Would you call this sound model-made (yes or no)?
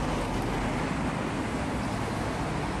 no